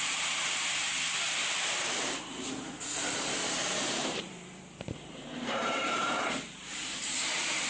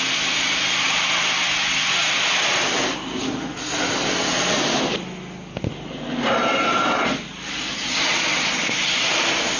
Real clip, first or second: second